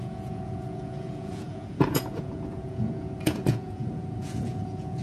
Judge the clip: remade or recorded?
remade